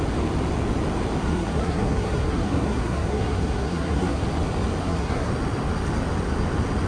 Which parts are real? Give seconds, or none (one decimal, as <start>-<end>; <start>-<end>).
0.0-1.2; 4.2-4.8; 5.3-6.9